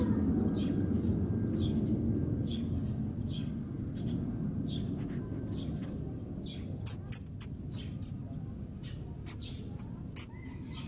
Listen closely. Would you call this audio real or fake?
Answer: real